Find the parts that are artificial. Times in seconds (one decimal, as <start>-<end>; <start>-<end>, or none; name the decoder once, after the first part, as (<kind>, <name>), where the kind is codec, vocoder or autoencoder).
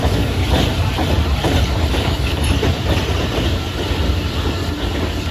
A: 0.0-0.4 (codec, DAC); 1.9-2.6